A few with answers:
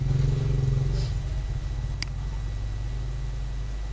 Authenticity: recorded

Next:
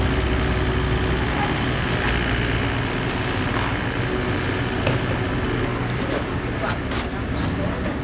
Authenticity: recorded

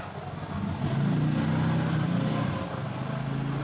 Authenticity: recorded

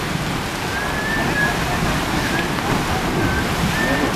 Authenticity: recorded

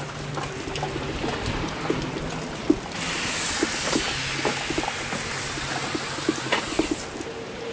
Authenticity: recorded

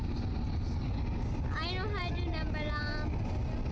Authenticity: recorded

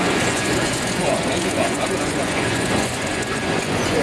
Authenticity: remade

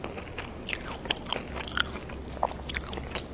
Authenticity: recorded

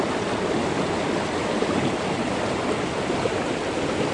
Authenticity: recorded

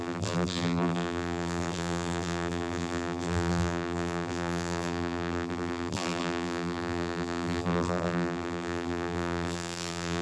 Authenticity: remade